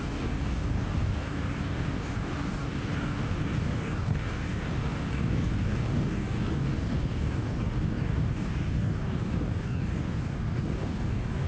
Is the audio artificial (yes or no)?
yes